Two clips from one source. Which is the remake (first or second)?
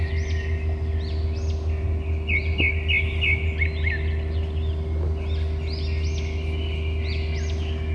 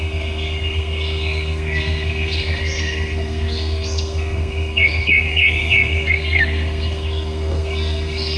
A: second